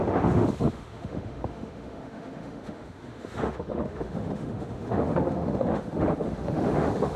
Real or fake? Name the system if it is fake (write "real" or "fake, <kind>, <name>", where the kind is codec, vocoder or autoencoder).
fake, autoencoder, DAC-VAE